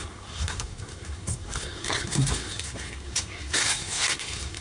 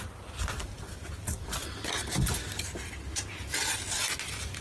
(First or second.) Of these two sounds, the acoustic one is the second